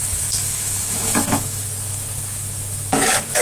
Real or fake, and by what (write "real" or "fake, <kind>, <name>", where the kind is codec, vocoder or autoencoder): fake, autoencoder, DAC-VAE